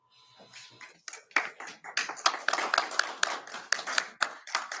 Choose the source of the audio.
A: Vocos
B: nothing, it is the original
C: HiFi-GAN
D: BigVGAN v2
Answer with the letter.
B